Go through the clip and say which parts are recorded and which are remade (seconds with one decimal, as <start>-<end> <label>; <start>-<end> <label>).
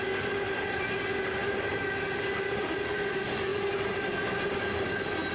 0.0-5.3 recorded